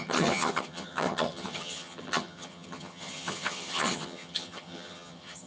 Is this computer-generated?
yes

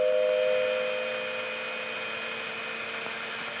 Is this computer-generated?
no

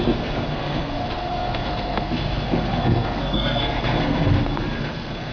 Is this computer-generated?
yes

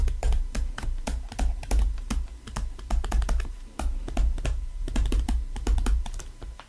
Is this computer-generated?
yes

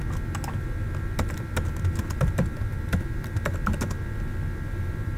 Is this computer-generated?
no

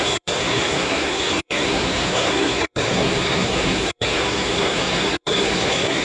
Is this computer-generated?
yes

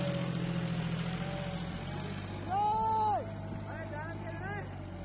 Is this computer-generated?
no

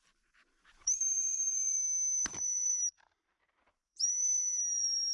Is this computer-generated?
yes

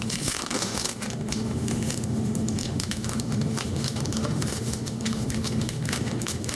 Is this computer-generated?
yes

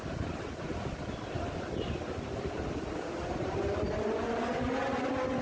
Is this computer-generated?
no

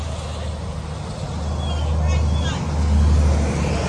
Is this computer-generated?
no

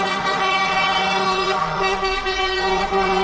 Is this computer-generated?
yes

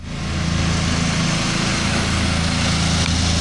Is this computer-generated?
no